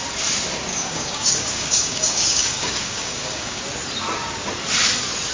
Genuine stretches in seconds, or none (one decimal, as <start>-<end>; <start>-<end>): 0.0-0.7; 3.6-5.3